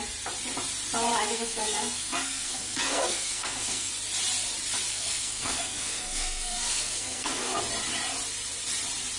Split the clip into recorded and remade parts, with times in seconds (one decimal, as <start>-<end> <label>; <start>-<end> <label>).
0.0-1.1 recorded; 1.1-3.9 remade; 3.9-4.9 recorded; 4.9-7.6 remade; 7.6-9.2 recorded